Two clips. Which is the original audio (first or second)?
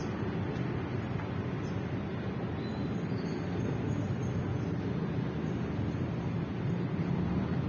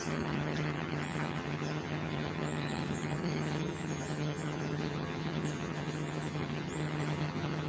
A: first